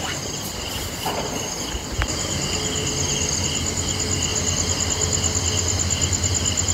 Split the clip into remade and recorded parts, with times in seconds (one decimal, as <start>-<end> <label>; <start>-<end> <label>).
0.0-6.7 recorded